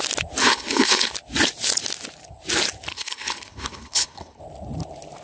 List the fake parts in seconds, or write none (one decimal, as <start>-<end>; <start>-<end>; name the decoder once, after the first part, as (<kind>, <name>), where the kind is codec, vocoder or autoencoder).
0.4-1.1 (codec, HILCodec); 2.9-4.4